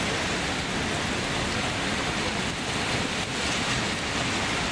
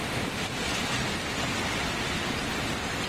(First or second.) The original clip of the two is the second